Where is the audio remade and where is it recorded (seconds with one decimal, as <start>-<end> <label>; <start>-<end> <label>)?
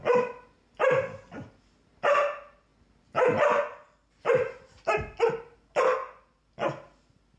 0.0-7.4 recorded